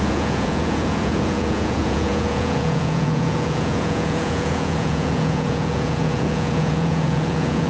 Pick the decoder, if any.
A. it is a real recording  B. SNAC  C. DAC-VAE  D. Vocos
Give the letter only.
D